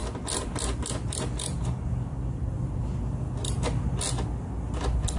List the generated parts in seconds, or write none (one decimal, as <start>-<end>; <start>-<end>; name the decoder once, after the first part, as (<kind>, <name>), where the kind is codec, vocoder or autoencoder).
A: 1.0-1.6 (vocoder, BigVGAN v2); 2.1-2.8